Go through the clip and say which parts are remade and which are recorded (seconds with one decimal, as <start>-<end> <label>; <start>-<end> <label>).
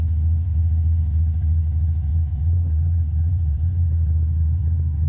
0.0-2.1 recorded; 2.1-4.6 remade; 4.6-5.1 recorded